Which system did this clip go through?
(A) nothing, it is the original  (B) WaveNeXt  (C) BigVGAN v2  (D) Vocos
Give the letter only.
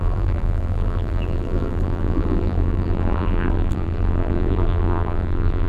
C